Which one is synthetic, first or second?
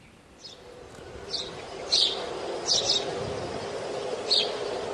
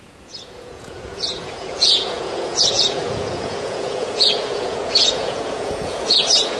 second